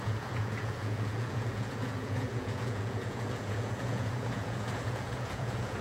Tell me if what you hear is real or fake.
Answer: fake